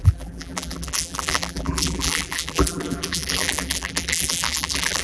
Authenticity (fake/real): fake